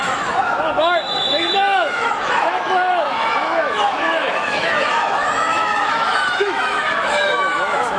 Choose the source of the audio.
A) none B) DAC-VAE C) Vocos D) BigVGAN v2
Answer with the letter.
B